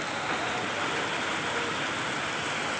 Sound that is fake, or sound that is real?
real